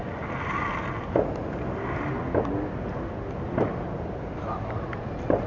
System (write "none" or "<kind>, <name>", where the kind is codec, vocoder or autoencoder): none